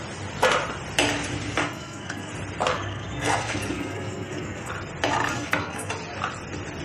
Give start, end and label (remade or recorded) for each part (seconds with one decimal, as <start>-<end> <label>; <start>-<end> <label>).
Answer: 0.0-1.6 recorded; 1.6-2.3 remade; 2.3-2.7 recorded; 2.7-4.7 remade; 4.7-5.3 recorded; 5.3-5.9 remade; 5.9-6.8 recorded